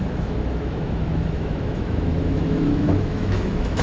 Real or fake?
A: fake